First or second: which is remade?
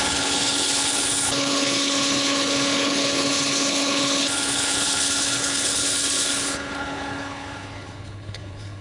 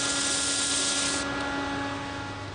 first